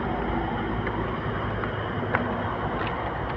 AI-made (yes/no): no